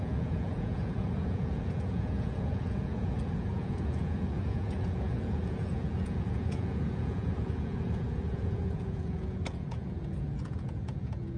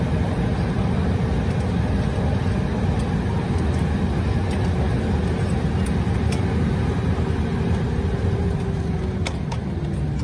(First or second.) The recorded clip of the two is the second